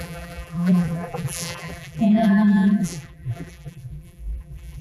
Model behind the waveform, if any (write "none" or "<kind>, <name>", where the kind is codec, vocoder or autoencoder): vocoder, BigVGAN v2